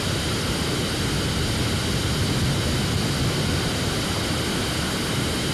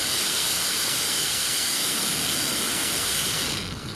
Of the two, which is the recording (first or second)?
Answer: first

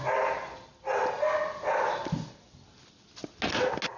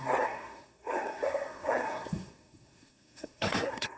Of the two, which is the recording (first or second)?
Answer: first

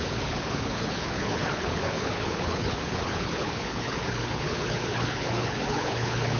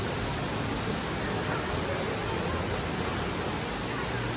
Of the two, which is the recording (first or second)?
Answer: second